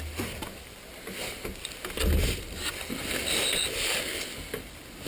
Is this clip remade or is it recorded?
recorded